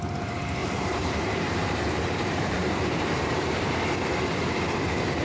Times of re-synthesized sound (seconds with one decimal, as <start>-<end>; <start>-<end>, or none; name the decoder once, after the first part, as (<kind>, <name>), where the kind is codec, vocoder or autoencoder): 0.6-3.7 (vocoder, BigVGAN v2)